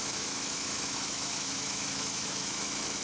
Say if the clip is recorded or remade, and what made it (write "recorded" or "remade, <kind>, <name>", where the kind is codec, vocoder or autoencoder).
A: remade, autoencoder, DAC-VAE